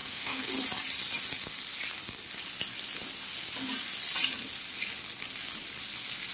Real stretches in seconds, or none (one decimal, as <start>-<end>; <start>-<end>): 0.5-6.3